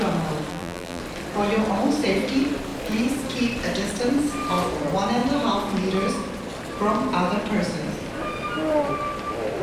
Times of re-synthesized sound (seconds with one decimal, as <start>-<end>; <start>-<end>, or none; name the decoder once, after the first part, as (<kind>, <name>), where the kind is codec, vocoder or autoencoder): 0.5-1.0 (vocoder, BigVGAN v2)